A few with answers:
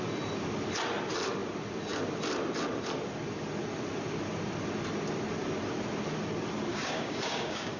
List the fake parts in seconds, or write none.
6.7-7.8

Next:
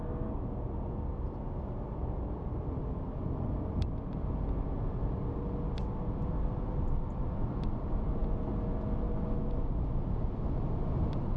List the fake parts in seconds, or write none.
none

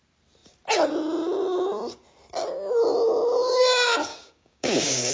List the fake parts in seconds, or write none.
4.1-5.1

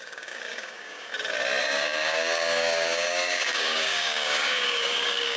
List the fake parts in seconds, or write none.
0.0-1.1; 1.6-5.4

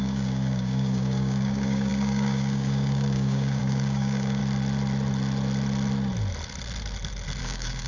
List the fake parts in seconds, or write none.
0.0-4.4; 7.4-7.9

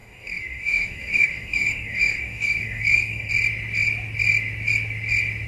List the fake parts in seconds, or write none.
0.0-3.3